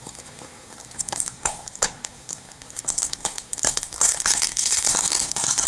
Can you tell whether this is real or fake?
fake